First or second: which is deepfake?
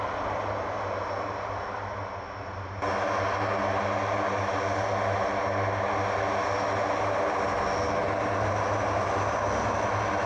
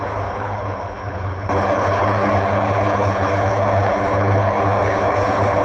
second